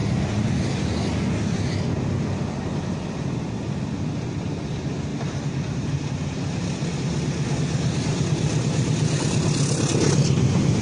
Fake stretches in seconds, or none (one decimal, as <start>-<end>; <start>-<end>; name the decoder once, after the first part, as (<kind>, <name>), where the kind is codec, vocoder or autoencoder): 5.1-6.1 (vocoder, BigVGAN v2)